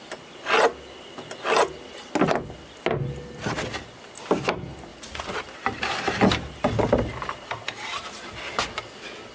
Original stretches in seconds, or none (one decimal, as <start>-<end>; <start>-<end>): 0.0-9.3